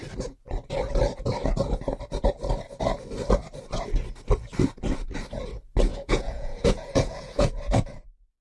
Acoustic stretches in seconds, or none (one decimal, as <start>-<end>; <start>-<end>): 0.0-5.9; 7.6-8.4